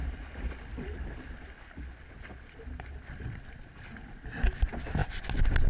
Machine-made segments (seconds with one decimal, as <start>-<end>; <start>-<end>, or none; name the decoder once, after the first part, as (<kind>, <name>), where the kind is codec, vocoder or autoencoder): none